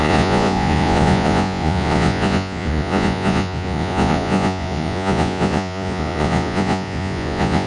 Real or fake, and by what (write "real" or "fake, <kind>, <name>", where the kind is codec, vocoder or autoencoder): fake, vocoder, Vocos